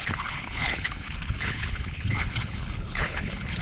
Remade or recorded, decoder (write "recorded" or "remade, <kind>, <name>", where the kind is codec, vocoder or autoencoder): remade, codec, HILCodec